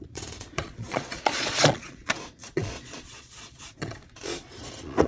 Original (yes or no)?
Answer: no